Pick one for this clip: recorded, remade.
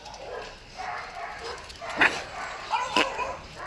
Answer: recorded